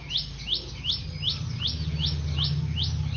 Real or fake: real